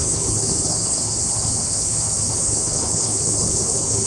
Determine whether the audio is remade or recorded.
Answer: remade